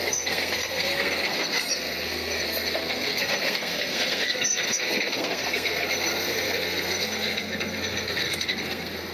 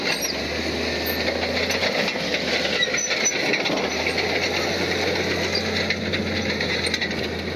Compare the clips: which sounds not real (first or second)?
first